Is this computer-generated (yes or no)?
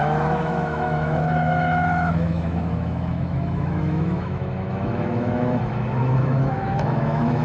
yes